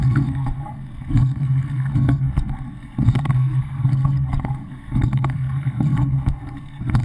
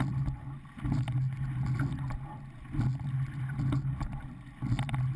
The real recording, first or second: second